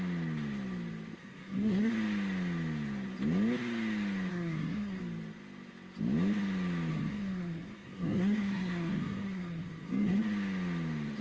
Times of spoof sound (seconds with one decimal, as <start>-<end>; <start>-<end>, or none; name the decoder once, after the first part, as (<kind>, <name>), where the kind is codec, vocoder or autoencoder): 1.2-1.9 (codec, SNAC); 4.3-5.0; 6.9-10.2